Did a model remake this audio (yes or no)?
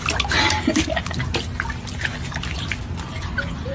no